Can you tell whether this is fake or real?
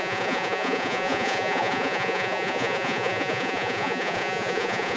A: fake